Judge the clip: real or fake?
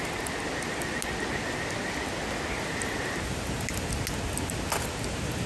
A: real